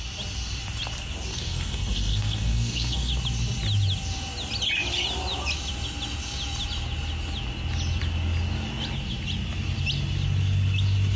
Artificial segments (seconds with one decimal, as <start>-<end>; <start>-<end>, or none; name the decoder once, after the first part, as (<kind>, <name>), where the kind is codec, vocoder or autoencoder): 1.3-3.1 (codec, SNAC)